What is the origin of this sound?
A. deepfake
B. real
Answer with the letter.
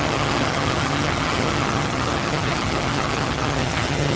A